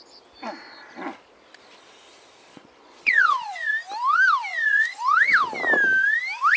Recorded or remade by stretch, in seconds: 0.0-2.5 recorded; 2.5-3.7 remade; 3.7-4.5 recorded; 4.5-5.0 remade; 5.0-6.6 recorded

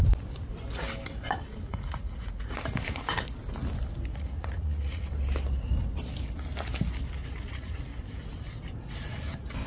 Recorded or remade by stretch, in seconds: 0.0-1.7 recorded; 1.7-2.6 remade; 2.6-4.1 recorded; 4.1-5.1 remade; 5.1-7.2 recorded; 7.2-7.8 remade; 7.8-9.7 recorded

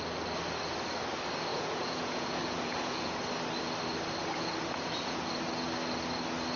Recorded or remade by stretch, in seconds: 0.0-1.5 recorded; 1.5-3.3 remade; 3.3-4.2 recorded; 4.2-5.3 remade; 5.3-6.6 recorded

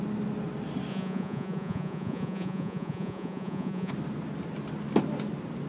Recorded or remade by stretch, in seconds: 0.0-0.9 recorded; 0.9-3.9 remade; 3.9-5.7 recorded

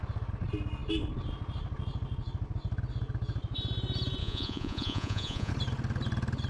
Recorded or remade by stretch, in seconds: 0.0-4.2 recorded; 4.2-5.5 remade; 5.5-6.5 recorded